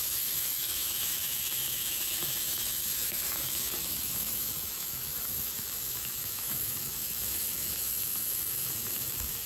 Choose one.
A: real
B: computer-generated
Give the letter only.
B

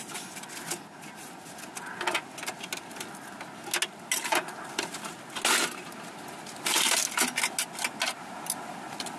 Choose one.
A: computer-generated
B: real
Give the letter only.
B